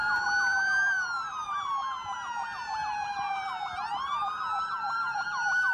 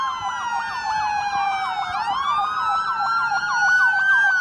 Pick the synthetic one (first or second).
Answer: first